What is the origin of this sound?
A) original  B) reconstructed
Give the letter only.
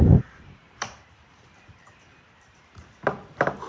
B